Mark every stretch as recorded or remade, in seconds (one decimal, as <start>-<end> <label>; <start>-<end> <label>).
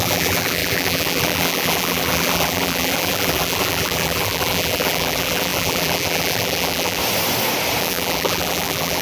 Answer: 0.0-7.0 remade; 7.0-7.8 recorded; 7.8-9.0 remade